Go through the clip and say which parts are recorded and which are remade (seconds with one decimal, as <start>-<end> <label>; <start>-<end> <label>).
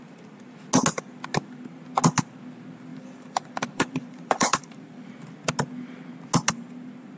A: 0.0-2.9 recorded; 2.9-5.1 remade; 5.1-7.2 recorded